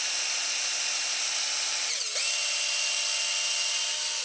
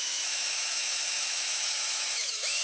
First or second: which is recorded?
first